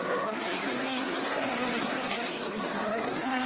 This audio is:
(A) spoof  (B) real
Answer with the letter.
A